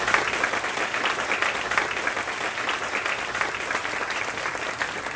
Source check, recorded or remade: recorded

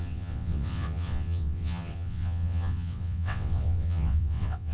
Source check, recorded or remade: remade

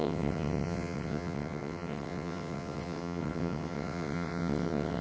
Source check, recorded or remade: remade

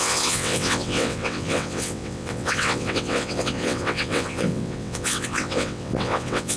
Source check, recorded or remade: remade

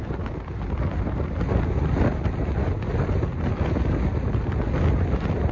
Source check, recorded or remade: recorded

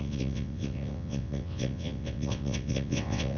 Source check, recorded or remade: remade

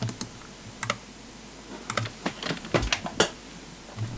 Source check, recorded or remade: recorded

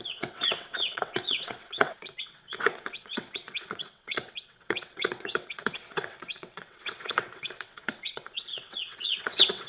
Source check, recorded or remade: remade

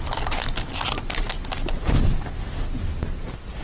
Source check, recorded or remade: recorded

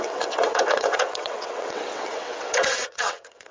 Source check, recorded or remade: remade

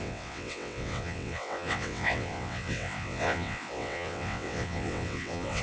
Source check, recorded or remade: remade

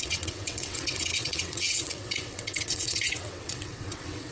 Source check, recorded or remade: remade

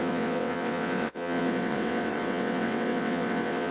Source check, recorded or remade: remade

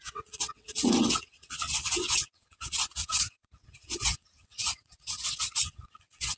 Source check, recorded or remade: remade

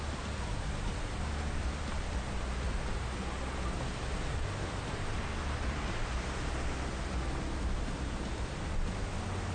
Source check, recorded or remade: recorded